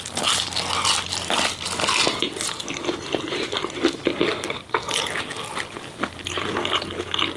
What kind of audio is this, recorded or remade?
recorded